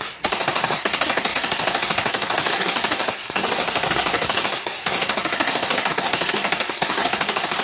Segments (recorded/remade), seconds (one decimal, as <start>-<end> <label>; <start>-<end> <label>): 0.0-7.6 remade